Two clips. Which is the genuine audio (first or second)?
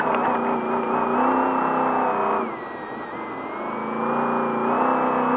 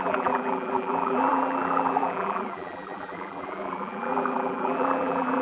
first